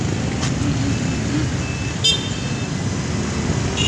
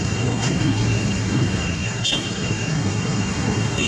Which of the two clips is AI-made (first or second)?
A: second